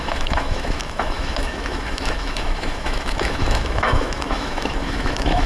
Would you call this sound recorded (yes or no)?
no